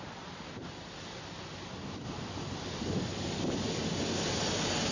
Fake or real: real